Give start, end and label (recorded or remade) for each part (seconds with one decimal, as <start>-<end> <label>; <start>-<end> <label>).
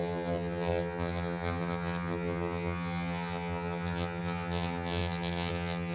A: 0.0-5.9 remade